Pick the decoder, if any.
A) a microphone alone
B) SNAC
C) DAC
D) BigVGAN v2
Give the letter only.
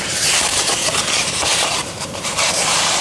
D